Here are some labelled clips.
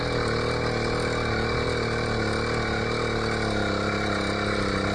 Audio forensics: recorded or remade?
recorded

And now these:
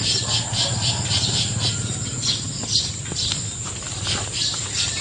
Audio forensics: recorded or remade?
recorded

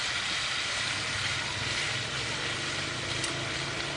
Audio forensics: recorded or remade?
recorded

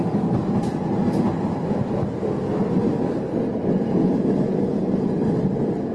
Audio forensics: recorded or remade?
recorded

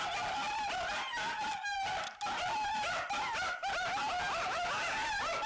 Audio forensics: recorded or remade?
recorded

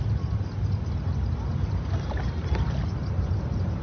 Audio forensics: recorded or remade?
recorded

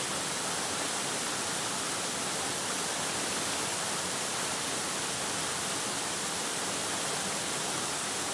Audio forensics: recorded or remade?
recorded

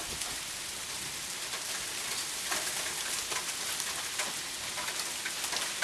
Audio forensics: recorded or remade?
recorded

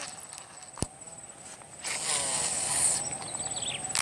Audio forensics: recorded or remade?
recorded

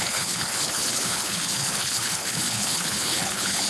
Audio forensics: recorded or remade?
remade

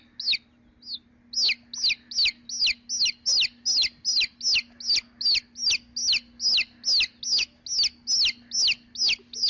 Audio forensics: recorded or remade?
recorded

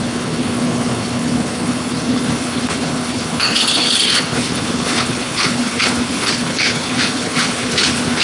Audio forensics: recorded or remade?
remade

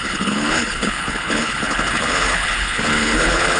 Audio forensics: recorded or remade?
remade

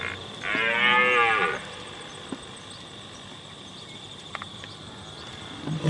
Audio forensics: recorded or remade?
recorded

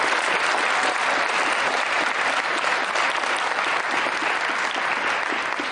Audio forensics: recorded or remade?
recorded